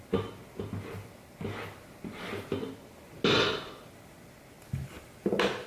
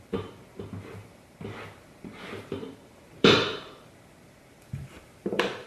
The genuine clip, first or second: first